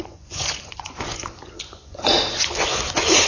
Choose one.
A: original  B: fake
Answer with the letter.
B